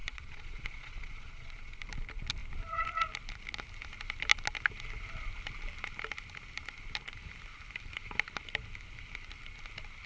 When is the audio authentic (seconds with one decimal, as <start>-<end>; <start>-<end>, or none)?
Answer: 1.8-10.1